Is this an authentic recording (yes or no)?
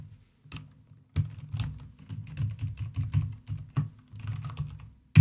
yes